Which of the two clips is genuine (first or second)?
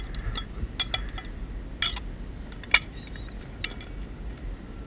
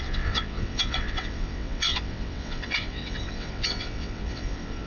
first